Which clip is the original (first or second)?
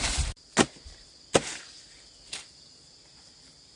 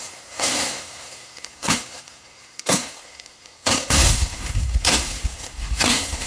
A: first